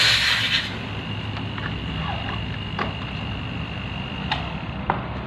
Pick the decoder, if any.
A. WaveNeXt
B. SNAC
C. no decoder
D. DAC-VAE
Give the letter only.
C